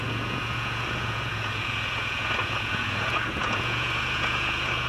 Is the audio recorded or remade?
remade